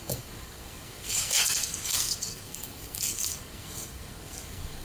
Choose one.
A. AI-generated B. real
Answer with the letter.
A